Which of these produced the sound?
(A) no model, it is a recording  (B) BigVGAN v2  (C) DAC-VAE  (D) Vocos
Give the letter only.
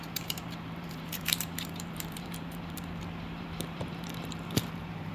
B